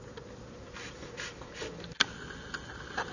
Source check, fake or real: real